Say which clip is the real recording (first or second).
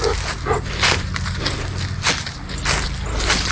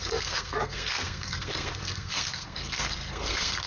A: first